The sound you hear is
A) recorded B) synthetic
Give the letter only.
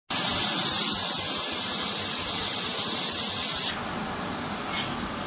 A